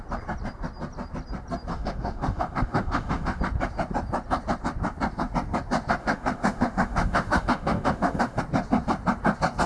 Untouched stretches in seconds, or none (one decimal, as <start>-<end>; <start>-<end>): 0.0-1.7; 3.4-6.0; 8.4-9.7